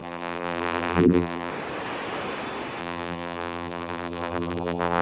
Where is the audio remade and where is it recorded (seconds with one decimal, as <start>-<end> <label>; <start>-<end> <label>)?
0.0-1.5 remade; 1.5-2.8 recorded; 2.8-5.0 remade